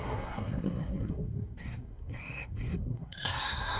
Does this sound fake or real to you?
fake